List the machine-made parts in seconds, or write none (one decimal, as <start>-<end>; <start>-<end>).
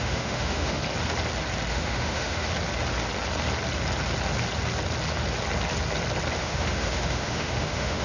0.0-0.8; 1.7-2.5; 6.4-8.0